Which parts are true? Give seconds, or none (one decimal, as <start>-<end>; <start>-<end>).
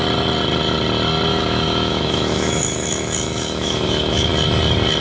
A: 0.0-1.3; 4.3-5.0